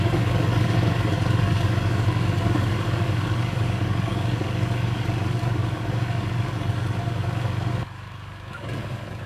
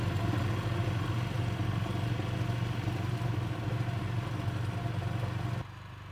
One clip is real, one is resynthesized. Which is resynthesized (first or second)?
first